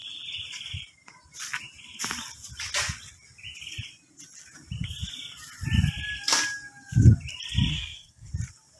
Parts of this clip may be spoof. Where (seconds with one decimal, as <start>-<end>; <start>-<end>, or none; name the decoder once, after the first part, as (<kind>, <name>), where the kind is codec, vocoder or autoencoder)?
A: 7.7-8.3 (codec, SNAC)